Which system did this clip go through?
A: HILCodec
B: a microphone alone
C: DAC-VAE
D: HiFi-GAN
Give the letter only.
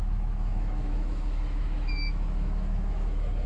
C